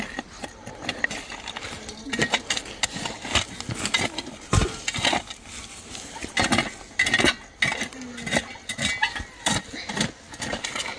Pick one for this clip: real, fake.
real